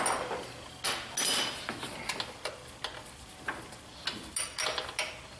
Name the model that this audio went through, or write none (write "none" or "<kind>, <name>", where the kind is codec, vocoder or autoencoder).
none